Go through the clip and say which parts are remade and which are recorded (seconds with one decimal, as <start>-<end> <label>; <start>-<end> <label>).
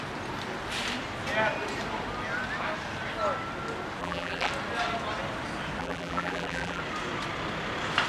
0.0-4.0 recorded; 4.0-4.5 remade; 4.5-5.8 recorded; 5.8-6.8 remade; 6.8-8.1 recorded